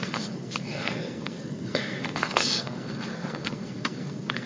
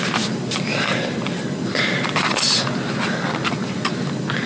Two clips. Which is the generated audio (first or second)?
first